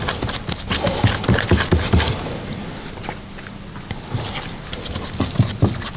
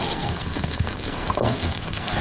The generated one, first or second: second